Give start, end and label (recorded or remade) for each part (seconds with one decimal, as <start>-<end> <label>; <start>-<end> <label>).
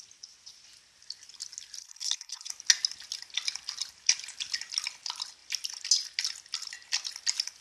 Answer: 0.0-1.8 recorded; 1.8-2.5 remade; 2.5-7.6 recorded